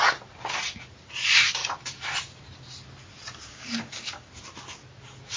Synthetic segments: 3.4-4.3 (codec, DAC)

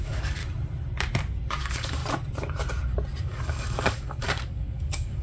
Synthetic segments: 0.0-0.4 (codec, DAC); 1.6-2.0; 3.2-5.2

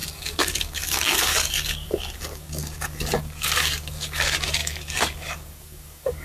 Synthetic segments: 0.0-6.2 (codec, DAC)